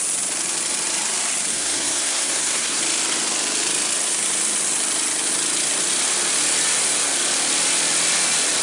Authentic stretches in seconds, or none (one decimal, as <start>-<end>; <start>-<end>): 0.0-1.5; 2.8-8.6